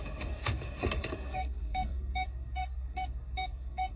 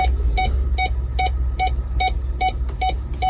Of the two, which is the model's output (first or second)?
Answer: first